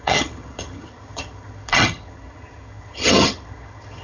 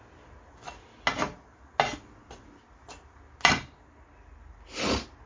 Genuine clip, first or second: second